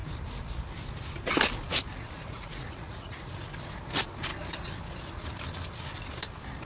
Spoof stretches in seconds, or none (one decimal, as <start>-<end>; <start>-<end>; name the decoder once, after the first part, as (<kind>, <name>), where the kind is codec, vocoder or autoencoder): 2.2-3.3 (vocoder, Vocos)